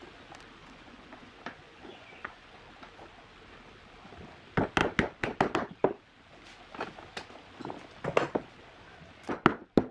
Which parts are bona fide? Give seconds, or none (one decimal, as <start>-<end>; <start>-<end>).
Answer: 0.0-0.6; 2.5-9.9